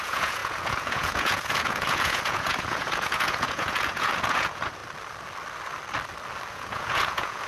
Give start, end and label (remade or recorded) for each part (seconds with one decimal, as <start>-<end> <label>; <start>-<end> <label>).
0.0-4.8 remade; 4.8-6.5 recorded; 6.5-7.5 remade